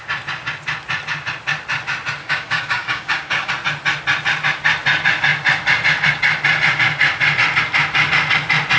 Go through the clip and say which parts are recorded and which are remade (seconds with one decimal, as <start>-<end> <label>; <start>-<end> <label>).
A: 0.0-2.2 recorded; 2.2-3.5 remade; 3.5-8.8 recorded